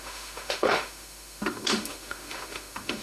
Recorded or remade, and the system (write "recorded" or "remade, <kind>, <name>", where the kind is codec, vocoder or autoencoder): remade, autoencoder, DAC-VAE